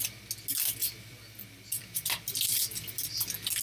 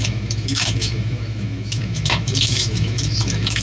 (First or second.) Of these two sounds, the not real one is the second